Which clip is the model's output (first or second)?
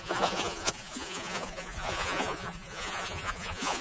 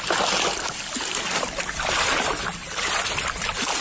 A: first